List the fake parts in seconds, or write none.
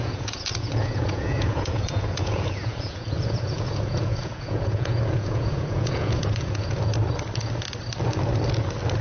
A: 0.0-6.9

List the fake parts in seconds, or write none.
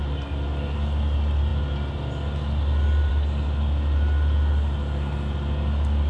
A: none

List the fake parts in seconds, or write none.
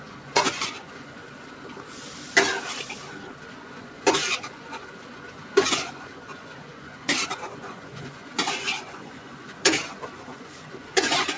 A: 0.0-1.2; 3.5-11.4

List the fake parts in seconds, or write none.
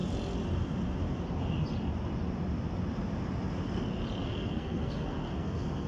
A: 4.2-5.9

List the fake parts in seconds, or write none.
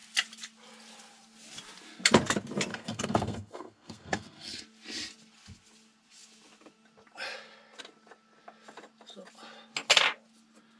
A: 2.7-4.6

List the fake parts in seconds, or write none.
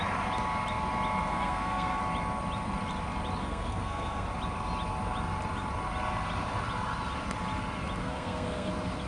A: 1.3-2.0; 3.4-4.3; 8.0-8.7